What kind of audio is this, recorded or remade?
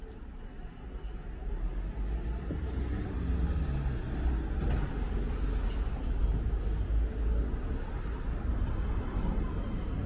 recorded